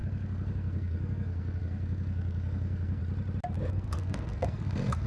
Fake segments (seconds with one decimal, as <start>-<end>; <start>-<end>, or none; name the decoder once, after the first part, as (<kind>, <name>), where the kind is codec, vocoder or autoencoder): 0.0-3.0 (codec, SNAC); 3.7-5.1